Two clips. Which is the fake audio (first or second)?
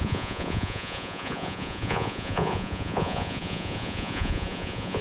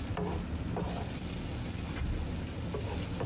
first